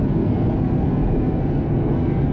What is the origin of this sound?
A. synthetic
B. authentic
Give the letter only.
A